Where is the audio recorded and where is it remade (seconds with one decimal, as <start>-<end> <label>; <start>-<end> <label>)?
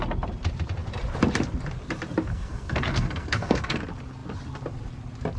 0.0-2.3 recorded; 2.3-3.8 remade; 3.8-5.4 recorded